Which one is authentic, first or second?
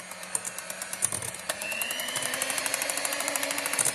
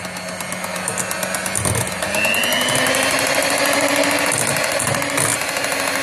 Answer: second